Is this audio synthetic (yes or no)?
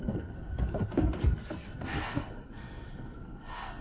yes